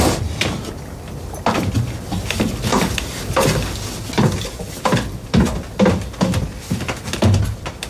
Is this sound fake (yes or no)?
no